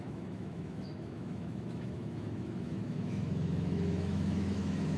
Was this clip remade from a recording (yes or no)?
yes